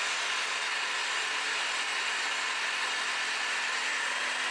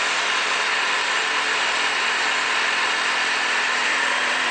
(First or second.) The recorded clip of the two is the first